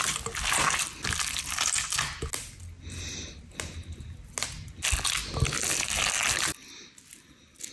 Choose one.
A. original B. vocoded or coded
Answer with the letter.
A